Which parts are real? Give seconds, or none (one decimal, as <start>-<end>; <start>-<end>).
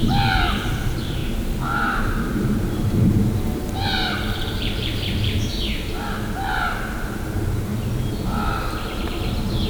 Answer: 1.2-2.2; 5.5-9.0